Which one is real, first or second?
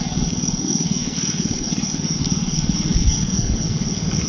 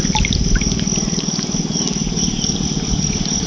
second